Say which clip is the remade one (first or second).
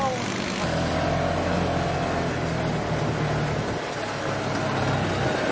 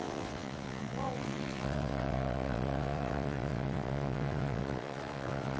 second